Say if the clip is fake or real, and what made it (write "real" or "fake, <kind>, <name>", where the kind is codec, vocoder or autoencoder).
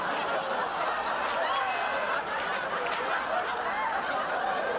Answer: real